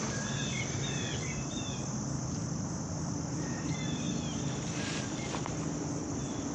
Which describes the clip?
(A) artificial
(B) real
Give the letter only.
A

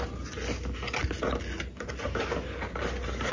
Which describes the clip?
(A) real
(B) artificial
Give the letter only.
A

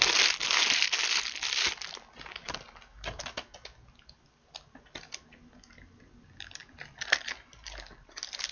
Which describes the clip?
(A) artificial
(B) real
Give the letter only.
B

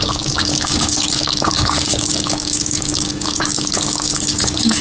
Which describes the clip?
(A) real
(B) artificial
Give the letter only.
B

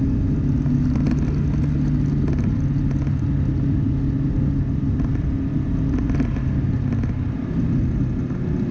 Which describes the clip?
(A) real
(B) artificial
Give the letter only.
A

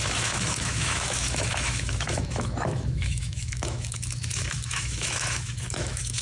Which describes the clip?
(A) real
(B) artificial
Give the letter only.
B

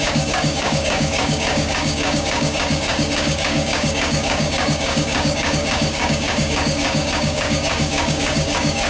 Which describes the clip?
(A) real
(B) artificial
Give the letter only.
B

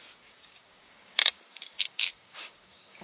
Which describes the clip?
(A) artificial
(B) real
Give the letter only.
A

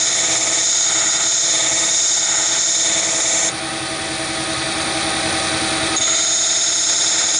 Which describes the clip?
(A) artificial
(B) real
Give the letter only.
B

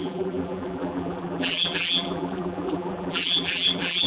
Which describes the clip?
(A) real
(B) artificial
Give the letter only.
B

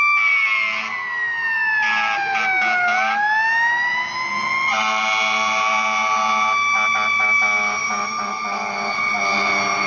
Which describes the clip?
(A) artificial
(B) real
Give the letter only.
B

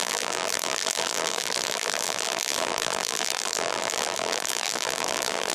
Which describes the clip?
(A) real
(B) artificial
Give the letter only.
B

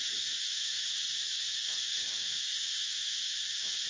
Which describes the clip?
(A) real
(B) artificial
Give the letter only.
B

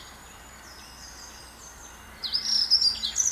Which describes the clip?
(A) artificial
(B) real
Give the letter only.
B